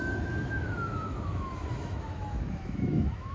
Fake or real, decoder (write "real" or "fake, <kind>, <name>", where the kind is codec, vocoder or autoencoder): fake, autoencoder, DAC-VAE